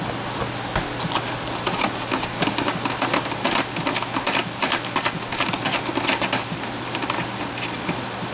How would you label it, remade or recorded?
recorded